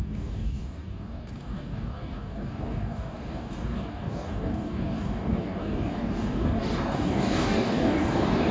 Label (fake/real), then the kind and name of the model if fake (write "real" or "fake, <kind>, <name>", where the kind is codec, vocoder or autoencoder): fake, codec, DAC